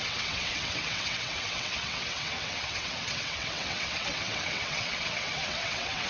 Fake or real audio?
fake